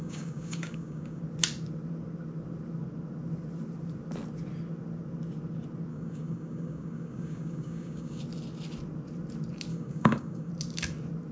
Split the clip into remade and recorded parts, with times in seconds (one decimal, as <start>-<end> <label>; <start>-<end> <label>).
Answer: 0.0-1.2 remade; 1.2-5.9 recorded; 5.9-8.2 remade; 8.2-9.7 recorded; 9.7-10.5 remade; 10.5-11.3 recorded